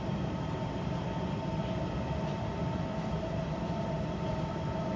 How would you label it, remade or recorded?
recorded